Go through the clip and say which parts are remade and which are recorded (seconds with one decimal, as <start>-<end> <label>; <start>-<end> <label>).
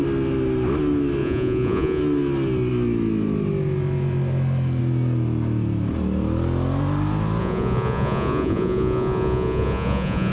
0.0-1.2 recorded; 1.2-2.0 remade; 2.0-7.4 recorded; 7.4-10.3 remade